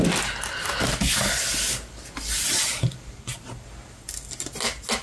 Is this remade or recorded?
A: recorded